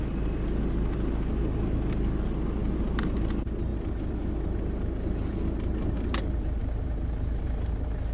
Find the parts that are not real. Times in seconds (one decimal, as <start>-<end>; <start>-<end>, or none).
none